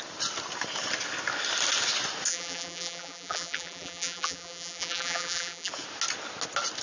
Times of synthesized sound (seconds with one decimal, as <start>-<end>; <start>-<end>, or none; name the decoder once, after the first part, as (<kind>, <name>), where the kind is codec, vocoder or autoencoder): 2.3-5.7 (vocoder, BigVGAN v2)